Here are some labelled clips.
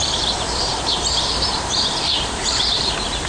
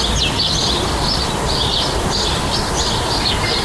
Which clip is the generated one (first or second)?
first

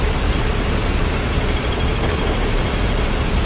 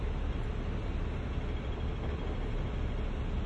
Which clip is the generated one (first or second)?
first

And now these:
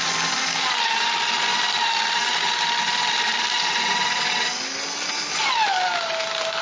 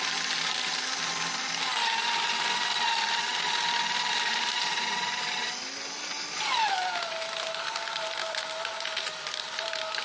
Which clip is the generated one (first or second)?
second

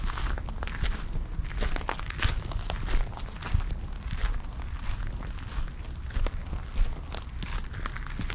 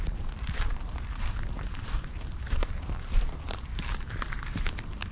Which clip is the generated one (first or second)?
second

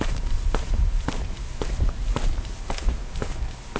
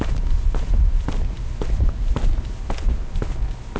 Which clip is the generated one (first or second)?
first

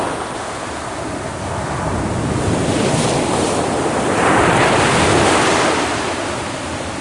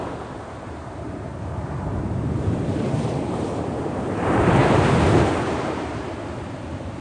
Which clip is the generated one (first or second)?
second